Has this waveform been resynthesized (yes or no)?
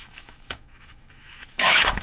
yes